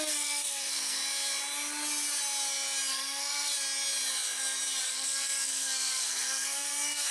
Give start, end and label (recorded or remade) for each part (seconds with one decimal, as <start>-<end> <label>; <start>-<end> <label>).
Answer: 0.0-1.0 remade; 1.0-2.9 recorded; 2.9-3.5 remade; 3.5-4.9 recorded; 4.9-7.1 remade